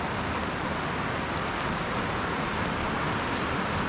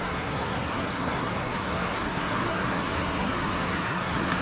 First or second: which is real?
first